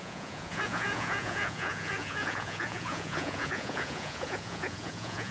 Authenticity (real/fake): fake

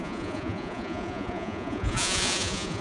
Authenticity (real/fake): fake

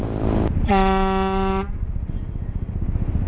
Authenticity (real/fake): real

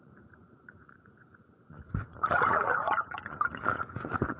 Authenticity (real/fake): fake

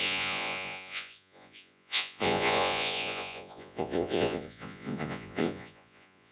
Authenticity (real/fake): fake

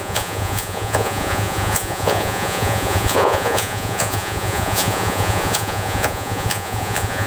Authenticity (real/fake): fake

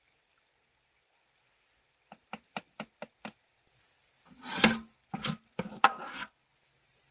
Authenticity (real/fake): real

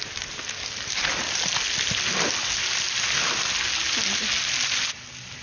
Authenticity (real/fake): real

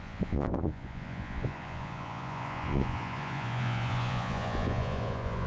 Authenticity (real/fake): fake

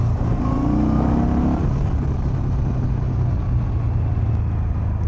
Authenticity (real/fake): real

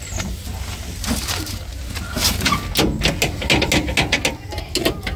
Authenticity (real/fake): real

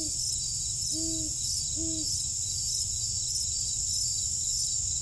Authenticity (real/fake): real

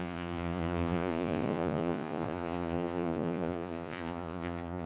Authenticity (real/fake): fake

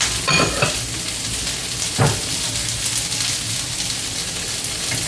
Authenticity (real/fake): real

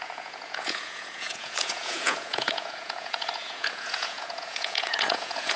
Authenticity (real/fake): fake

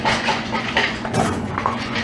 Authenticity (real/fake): fake